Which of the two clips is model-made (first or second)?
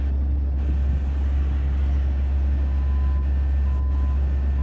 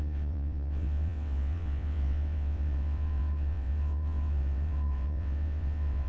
second